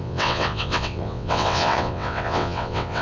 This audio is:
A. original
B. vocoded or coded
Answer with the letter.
B